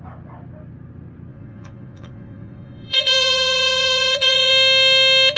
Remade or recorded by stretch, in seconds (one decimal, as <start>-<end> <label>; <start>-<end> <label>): 0.0-1.3 recorded; 1.3-4.5 remade; 4.5-5.4 recorded